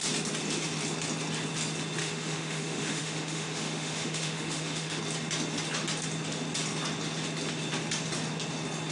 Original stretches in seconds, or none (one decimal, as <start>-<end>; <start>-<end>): 0.0-2.0; 5.0-8.9